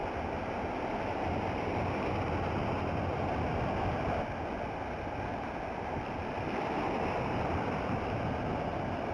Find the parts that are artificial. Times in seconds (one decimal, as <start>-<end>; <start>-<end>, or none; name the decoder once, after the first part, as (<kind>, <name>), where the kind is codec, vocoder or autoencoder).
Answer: none